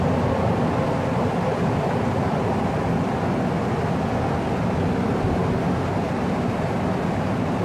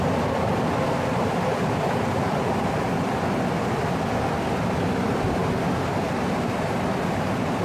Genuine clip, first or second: first